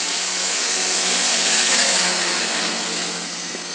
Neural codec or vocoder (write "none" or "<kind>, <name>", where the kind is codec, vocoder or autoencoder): codec, SNAC